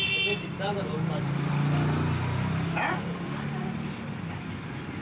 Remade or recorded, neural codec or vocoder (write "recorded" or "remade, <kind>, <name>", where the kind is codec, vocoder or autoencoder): recorded